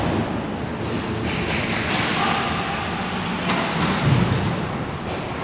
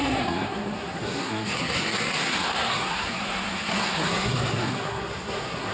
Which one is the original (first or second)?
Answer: first